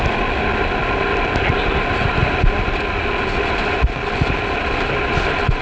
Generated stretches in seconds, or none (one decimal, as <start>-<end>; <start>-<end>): 2.2-5.6